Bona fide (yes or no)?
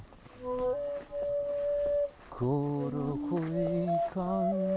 yes